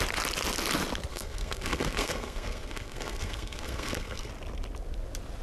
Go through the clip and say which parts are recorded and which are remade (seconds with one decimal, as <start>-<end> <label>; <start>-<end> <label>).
0.0-1.1 recorded; 1.1-4.3 remade; 4.3-5.4 recorded